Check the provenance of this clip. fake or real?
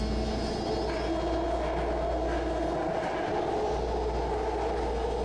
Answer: real